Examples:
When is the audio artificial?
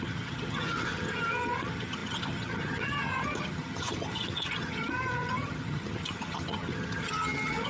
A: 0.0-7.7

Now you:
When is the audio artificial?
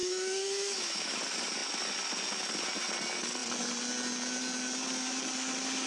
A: 0.0-1.2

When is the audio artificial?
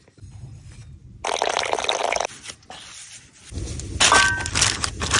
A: none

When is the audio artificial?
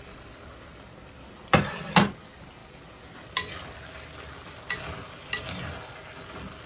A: none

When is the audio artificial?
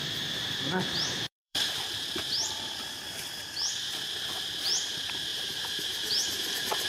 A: 0.0-4.1; 5.3-6.9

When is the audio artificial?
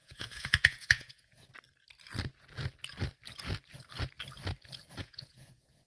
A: 0.0-1.5; 5.0-5.9